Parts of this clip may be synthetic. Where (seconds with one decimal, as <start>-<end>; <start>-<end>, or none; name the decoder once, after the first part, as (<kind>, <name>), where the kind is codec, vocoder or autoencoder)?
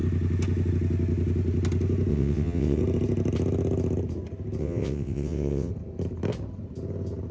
2.1-2.8 (vocoder, WaveNeXt); 4.6-5.7